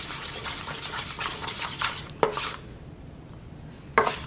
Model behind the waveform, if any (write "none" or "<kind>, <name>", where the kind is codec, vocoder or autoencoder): vocoder, BigVGAN v2